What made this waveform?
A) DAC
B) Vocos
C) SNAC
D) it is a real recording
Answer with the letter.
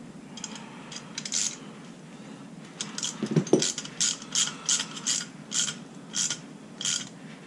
D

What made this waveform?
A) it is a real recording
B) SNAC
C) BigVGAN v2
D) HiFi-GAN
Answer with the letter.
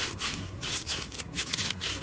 B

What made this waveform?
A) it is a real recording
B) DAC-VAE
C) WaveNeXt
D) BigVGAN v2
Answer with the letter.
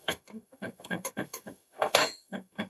B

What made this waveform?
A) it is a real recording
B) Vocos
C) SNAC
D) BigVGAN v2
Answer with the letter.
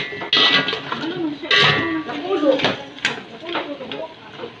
A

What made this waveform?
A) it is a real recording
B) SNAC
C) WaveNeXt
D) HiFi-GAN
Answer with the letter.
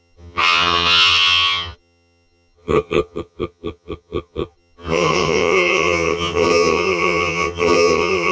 D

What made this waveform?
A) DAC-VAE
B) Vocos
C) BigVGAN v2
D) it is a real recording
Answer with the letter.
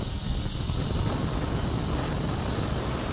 D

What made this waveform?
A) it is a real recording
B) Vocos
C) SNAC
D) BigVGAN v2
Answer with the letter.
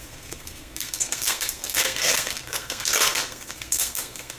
C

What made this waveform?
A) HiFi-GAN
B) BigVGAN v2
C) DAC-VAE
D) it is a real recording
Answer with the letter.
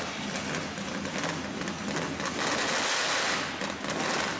D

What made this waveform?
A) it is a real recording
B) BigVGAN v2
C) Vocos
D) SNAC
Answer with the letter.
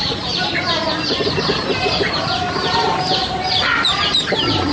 B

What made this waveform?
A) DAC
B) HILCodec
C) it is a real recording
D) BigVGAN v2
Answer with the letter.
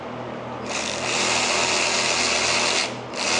C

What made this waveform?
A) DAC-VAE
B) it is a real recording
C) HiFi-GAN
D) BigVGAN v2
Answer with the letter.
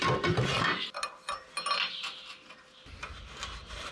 B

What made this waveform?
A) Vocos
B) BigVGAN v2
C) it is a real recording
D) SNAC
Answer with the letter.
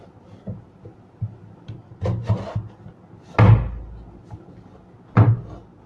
C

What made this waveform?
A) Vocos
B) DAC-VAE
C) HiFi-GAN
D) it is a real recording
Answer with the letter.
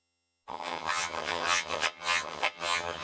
C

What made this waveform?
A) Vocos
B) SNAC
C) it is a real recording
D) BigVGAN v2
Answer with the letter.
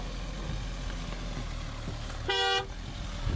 C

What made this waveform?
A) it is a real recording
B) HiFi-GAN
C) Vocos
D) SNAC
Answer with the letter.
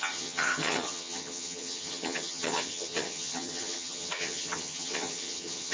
B